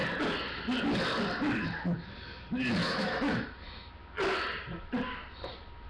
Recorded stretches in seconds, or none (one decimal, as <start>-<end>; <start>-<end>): 0.0-2.8; 3.9-5.9